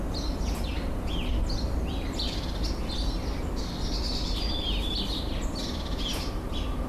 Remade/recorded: recorded